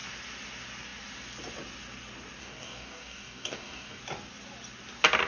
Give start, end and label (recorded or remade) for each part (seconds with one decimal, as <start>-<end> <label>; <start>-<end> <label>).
0.0-2.4 recorded; 2.4-4.0 remade; 4.0-5.3 recorded